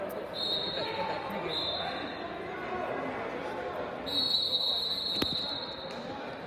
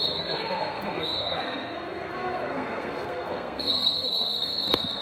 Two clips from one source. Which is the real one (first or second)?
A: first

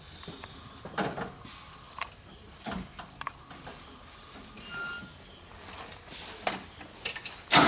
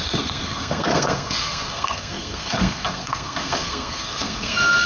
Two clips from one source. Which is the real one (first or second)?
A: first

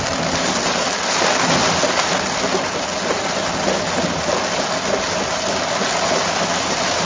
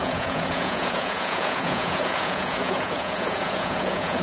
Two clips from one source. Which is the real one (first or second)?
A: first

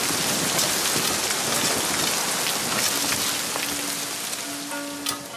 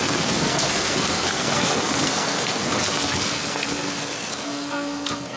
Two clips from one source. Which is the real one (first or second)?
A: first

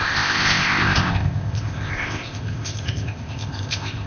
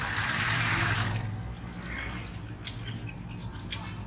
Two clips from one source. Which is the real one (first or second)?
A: second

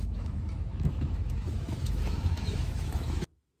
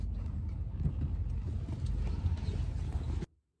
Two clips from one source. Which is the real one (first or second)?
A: second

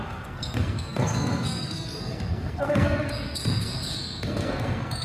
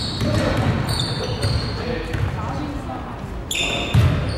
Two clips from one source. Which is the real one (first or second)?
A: second